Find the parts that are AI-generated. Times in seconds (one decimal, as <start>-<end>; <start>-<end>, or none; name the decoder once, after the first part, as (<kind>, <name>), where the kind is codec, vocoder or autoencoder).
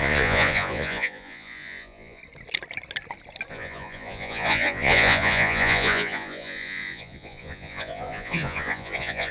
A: 0.0-2.2 (vocoder, Vocos); 3.5-9.3